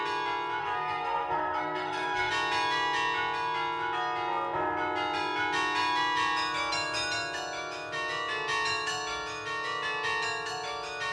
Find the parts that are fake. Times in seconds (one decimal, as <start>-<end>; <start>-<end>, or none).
0.6-2.3